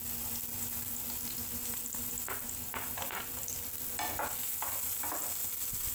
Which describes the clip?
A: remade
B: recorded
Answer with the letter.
B